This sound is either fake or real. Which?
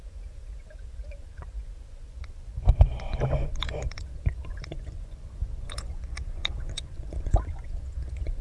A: fake